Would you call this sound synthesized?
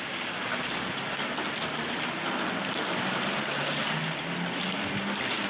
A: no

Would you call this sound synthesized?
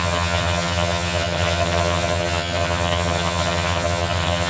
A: yes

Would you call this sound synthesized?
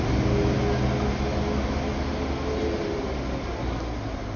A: no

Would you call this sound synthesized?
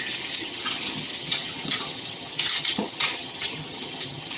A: yes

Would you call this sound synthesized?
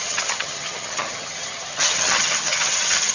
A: yes